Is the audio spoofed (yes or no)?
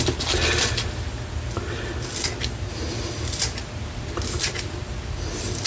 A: no